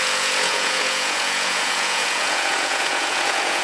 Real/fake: fake